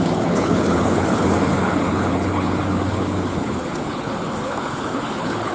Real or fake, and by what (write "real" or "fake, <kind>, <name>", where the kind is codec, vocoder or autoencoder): fake, codec, HILCodec